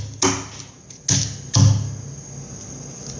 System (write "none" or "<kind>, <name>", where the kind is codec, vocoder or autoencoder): none